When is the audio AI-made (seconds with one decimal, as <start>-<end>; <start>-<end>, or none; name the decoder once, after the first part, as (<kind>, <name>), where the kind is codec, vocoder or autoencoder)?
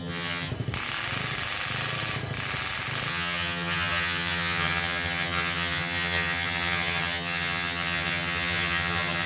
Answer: 0.0-0.5 (vocoder, HiFi-GAN); 3.1-9.3